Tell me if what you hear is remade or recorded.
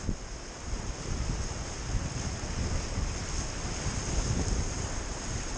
recorded